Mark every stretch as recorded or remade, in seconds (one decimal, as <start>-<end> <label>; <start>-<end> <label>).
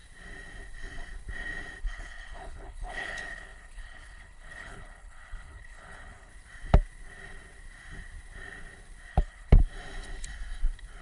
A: 0.0-1.8 recorded; 1.8-6.3 remade; 6.3-9.1 recorded; 9.1-9.5 remade; 9.5-11.0 recorded